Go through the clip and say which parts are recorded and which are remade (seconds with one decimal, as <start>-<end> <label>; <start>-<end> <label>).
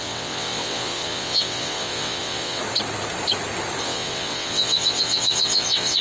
0.0-2.6 remade; 2.6-3.8 recorded; 3.8-6.0 remade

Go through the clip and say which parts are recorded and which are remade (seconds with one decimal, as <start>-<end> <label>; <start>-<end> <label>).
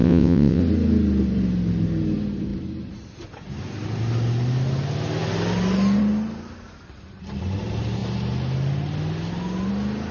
0.0-0.6 remade; 0.6-10.1 recorded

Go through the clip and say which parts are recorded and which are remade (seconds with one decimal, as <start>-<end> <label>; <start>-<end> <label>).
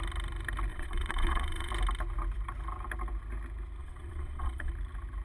0.0-0.7 recorded; 0.7-1.7 remade; 1.7-3.8 recorded; 3.8-4.7 remade; 4.7-5.2 recorded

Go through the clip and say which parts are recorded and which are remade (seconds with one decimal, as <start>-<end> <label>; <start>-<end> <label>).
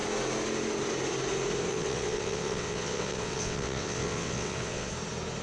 0.0-1.7 recorded; 1.7-4.9 remade; 4.9-5.4 recorded